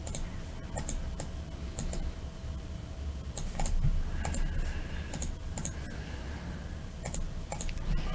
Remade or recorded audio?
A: recorded